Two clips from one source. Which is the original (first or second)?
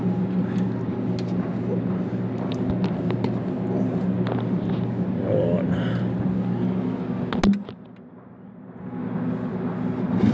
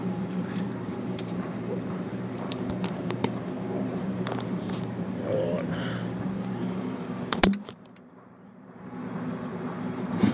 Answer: first